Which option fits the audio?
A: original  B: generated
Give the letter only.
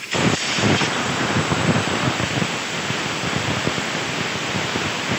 A